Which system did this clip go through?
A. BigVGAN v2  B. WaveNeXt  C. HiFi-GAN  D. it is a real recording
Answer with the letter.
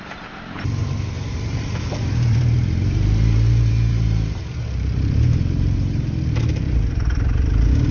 A